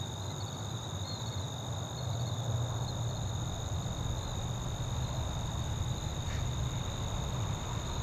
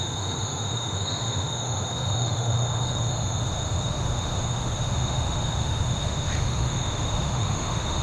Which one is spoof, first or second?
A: second